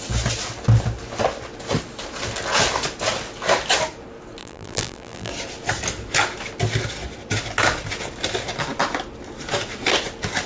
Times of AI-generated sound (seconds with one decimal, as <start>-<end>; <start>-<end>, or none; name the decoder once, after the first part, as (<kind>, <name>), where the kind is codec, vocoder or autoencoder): 4.4-5.3 (vocoder, BigVGAN v2)

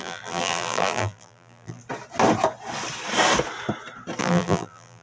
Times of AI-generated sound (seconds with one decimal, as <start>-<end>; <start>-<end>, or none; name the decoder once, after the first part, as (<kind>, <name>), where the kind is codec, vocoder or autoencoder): 0.0-1.8 (vocoder, BigVGAN v2); 4.2-5.0

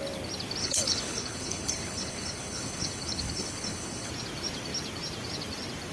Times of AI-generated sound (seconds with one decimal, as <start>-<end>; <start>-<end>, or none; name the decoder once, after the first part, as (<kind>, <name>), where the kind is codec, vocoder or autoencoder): 0.6-4.1 (codec, HILCodec)

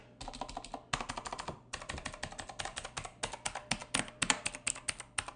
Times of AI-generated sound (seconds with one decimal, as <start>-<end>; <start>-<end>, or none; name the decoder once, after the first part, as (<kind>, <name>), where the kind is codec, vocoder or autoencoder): none

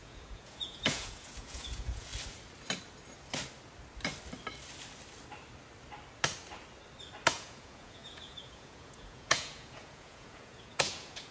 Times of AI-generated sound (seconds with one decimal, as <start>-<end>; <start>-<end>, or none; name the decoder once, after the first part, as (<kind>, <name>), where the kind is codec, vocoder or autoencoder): 0.0-2.1 (vocoder, Vocos); 7.3-11.3

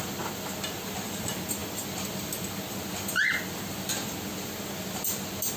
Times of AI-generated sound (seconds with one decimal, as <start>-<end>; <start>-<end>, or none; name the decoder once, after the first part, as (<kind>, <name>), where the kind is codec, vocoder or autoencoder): none